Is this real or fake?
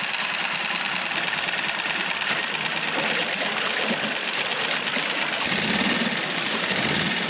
real